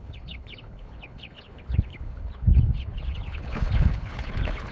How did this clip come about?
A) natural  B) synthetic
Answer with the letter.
B